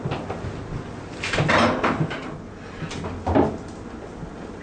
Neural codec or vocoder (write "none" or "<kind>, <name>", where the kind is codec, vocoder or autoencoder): none